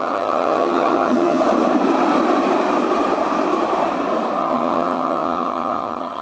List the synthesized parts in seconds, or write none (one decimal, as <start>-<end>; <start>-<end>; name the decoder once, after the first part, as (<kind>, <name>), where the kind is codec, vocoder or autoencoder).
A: 0.0-1.4 (vocoder, HiFi-GAN); 4.4-6.2

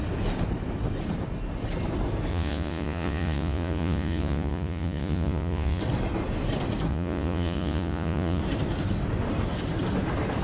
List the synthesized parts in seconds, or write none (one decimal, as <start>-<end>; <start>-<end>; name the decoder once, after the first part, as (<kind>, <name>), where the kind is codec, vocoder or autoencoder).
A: 2.3-5.8 (vocoder, Vocos); 6.9-8.4

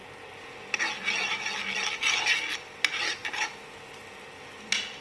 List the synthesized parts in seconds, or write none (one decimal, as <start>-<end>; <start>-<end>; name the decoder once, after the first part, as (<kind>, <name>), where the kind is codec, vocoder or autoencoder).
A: none

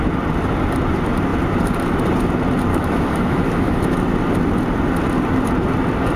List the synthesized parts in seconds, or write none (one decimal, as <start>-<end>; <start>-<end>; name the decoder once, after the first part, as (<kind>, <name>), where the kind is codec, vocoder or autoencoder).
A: 2.7-3.8 (autoencoder, DAC-VAE)

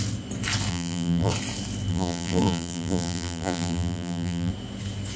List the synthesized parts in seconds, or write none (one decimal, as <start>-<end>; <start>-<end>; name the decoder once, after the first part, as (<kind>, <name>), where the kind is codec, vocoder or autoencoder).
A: 0.7-1.3 (vocoder, BigVGAN v2); 1.9-4.5

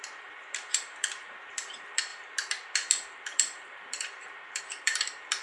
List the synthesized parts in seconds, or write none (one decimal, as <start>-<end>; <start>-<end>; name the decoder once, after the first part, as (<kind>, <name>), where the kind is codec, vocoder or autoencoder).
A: 0.0-5.4 (vocoder, BigVGAN v2)

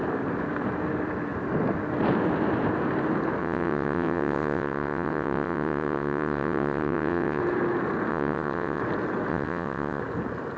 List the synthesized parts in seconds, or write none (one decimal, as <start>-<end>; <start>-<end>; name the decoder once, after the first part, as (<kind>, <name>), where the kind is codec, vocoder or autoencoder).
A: 3.4-7.4 (vocoder, WaveNeXt); 8.1-8.8; 9.3-10.0

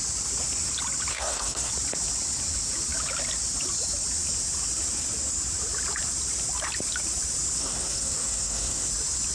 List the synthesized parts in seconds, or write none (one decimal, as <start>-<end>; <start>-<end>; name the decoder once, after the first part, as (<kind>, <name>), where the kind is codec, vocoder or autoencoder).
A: 1.1-1.7 (codec, SNAC); 7.6-8.9